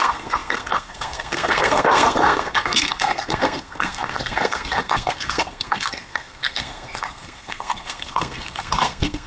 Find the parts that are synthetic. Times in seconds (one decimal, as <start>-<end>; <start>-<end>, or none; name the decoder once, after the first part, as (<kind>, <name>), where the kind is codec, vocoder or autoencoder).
0.0-9.3 (codec, SNAC)